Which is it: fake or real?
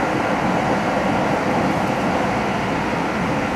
real